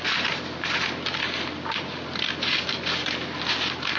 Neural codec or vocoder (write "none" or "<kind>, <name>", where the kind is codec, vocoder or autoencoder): none